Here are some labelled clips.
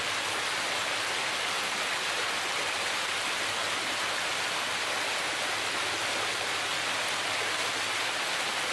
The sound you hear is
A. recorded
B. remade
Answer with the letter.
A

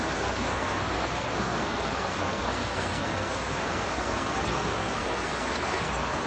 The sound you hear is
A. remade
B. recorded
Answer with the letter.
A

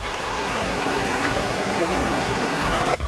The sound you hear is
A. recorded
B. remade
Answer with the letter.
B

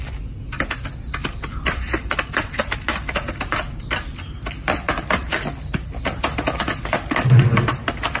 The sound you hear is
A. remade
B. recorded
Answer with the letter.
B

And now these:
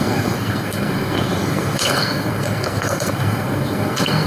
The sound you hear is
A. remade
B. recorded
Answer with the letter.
A